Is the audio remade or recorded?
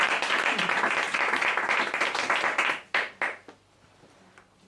recorded